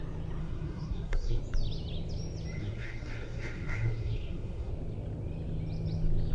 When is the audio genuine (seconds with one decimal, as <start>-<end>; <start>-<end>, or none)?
0.0-0.4; 1.4-2.6; 4.7-6.3